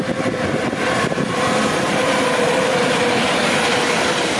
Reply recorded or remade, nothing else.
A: remade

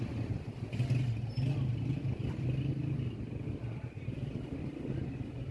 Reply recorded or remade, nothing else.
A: recorded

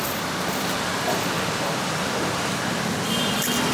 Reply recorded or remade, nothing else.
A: remade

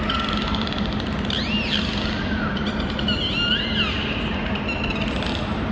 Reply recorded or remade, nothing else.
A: recorded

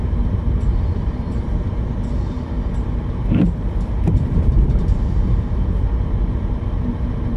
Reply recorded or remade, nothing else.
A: remade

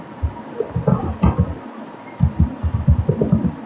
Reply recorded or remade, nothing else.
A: recorded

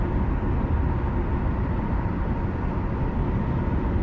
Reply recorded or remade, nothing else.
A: recorded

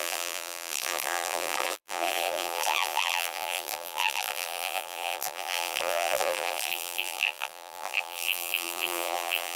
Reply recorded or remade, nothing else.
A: remade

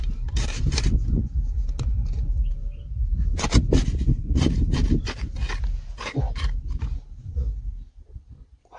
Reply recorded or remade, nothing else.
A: recorded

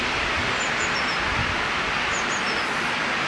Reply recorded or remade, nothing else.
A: recorded